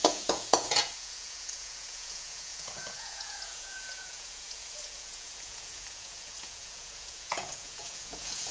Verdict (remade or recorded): remade